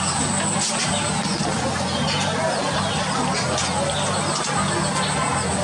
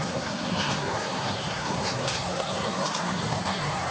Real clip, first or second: first